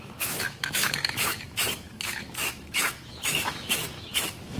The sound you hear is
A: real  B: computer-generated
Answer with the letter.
B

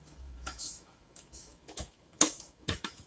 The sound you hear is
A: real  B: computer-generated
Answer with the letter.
B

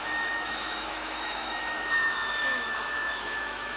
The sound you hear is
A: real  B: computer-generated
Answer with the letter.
B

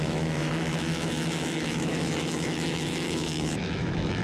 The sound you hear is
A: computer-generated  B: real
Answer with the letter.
A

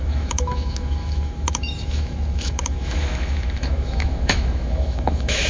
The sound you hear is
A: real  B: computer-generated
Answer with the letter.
B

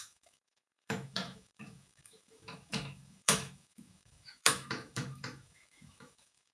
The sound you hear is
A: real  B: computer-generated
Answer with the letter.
B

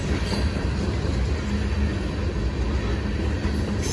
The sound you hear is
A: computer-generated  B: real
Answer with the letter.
B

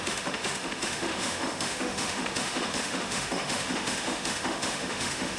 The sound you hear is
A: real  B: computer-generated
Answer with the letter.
B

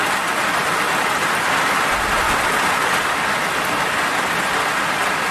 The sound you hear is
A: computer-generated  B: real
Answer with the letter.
B